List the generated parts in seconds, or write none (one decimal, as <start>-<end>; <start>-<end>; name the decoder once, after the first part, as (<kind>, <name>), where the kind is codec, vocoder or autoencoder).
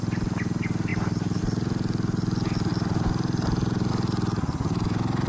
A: 0.9-1.4 (vocoder, BigVGAN v2); 2.7-3.9